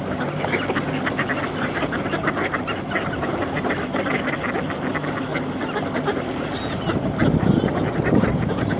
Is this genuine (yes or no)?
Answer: yes